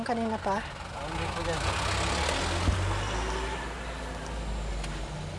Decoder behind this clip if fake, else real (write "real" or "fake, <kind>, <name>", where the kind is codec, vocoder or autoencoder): real